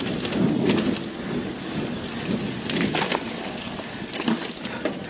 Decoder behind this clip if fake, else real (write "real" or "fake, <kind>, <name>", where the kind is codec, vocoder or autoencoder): real